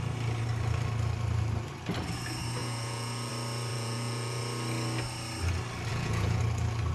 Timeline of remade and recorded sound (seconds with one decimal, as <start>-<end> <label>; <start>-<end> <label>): 0.0-2.6 recorded; 2.6-3.3 remade; 3.3-3.7 recorded; 3.7-4.4 remade; 4.4-5.9 recorded; 5.9-6.4 remade; 6.4-6.9 recorded